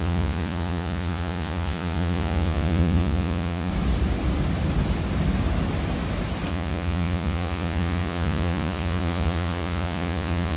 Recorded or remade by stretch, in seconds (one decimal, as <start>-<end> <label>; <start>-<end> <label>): 0.0-3.7 remade; 3.7-6.5 recorded; 6.5-10.6 remade